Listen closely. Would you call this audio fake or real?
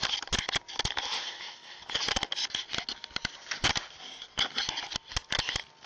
real